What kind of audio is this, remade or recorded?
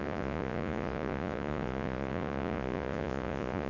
remade